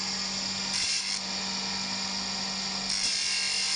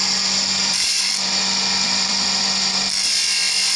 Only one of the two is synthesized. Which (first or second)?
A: second